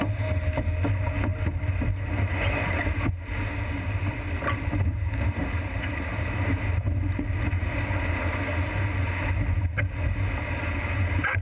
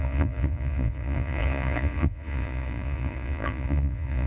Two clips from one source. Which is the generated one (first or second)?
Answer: second